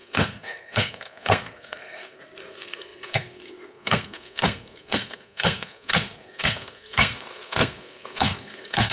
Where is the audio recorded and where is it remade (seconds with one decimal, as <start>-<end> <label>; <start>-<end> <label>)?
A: 0.0-8.9 remade